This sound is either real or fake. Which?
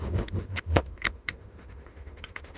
fake